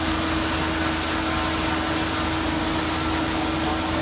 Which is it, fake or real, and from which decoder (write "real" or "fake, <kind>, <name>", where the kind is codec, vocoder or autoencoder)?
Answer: real